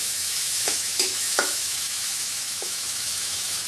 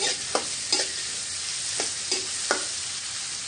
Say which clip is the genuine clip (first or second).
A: second